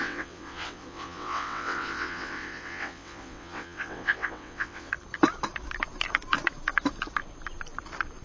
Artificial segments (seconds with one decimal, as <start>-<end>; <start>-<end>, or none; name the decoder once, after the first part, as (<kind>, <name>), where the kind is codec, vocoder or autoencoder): 0.0-4.9 (vocoder, WaveNeXt)